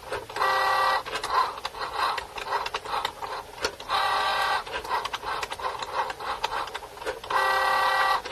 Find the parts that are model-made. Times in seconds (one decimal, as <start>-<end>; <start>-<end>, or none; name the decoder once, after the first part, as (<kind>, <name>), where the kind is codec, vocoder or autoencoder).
none